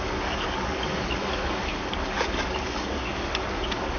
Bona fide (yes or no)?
no